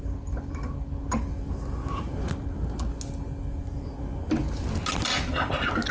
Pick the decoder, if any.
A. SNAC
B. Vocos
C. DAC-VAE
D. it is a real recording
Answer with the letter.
D